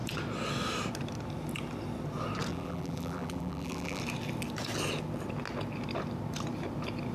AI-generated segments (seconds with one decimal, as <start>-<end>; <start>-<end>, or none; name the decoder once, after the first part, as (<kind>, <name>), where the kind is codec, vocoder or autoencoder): 2.5-4.0 (vocoder, BigVGAN v2)